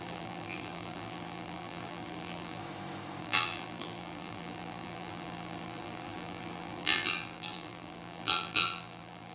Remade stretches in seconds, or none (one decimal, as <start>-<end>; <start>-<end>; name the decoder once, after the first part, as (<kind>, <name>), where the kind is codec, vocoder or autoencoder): 0.0-2.6 (vocoder, BigVGAN v2); 3.2-9.3